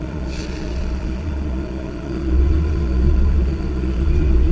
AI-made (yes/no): yes